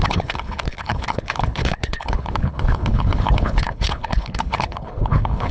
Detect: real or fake fake